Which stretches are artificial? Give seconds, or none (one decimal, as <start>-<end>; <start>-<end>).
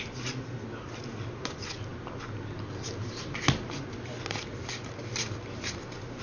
none